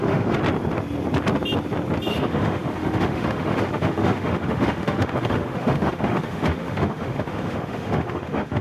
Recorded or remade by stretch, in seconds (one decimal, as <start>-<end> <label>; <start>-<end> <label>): 0.0-0.4 remade; 0.4-2.1 recorded; 2.1-8.6 remade